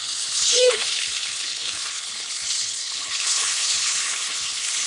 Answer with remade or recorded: remade